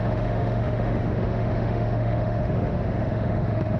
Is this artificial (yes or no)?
yes